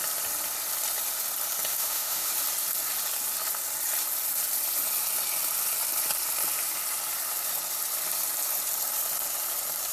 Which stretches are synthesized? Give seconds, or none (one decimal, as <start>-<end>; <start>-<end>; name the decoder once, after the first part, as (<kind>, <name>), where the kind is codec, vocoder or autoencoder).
1.7-2.3 (autoencoder, DAC-VAE)